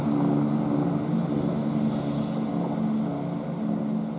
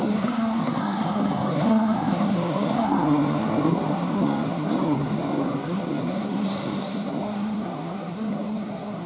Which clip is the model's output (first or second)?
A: second